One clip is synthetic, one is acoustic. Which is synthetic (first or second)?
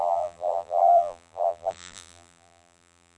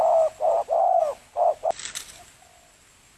first